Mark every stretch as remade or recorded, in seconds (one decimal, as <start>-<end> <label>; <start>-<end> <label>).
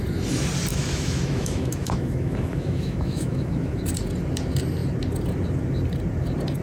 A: 0.0-0.7 recorded; 0.7-3.8 remade; 3.8-6.6 recorded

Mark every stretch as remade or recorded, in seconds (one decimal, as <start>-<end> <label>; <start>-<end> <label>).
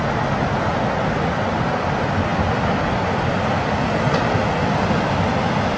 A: 0.0-5.8 recorded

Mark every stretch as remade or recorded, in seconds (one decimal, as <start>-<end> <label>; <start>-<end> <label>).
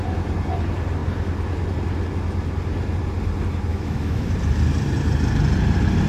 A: 0.0-3.7 recorded; 3.7-4.3 remade; 4.3-6.1 recorded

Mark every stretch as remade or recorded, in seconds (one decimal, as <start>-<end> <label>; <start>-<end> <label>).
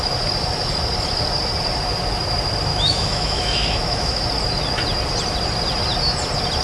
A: 0.0-2.7 recorded; 2.7-4.2 remade; 4.2-6.6 recorded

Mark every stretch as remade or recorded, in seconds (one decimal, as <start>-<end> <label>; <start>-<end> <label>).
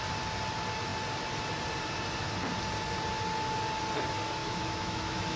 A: 0.0-4.4 recorded; 4.4-5.4 remade